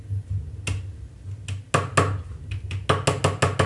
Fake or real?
real